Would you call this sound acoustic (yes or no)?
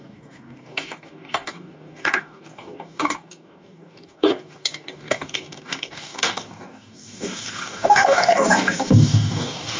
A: no